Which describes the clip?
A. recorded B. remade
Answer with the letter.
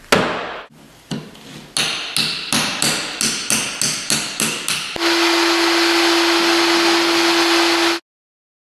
A